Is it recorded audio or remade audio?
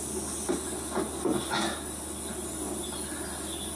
recorded